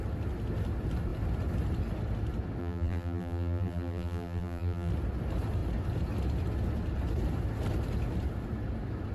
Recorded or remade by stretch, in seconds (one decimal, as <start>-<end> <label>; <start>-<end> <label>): 0.0-2.6 recorded; 2.6-4.9 remade; 4.9-9.1 recorded